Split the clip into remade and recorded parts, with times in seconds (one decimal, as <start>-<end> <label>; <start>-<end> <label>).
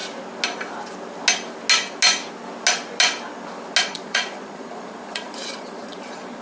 0.0-3.8 recorded; 3.8-6.4 remade